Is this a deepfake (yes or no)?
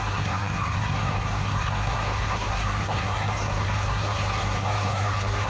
yes